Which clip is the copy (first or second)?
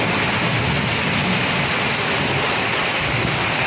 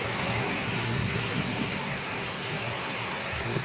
second